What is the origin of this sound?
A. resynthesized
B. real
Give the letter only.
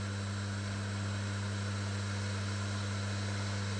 B